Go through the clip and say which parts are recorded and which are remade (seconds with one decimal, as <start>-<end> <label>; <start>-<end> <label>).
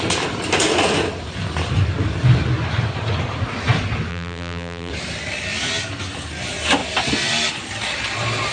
0.0-4.1 recorded; 4.1-4.9 remade; 4.9-8.5 recorded